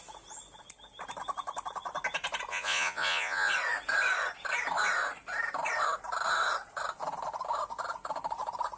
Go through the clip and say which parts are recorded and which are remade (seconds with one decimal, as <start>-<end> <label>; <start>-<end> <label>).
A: 0.0-2.5 recorded; 2.5-3.5 remade; 3.5-8.8 recorded